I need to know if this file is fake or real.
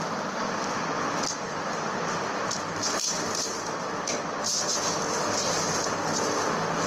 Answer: real